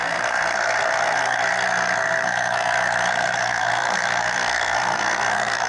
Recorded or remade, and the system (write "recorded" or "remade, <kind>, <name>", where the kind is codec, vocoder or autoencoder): remade, codec, SNAC